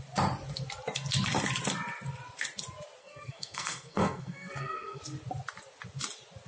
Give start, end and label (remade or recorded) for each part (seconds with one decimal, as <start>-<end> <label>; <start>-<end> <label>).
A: 0.0-3.0 recorded; 3.0-5.0 remade; 5.0-6.5 recorded